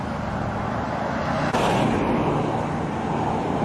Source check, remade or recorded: recorded